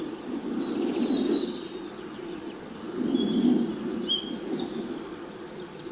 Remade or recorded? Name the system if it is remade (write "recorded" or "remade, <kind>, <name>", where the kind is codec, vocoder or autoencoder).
recorded